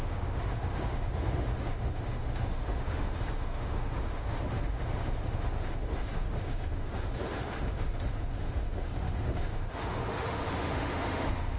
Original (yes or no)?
no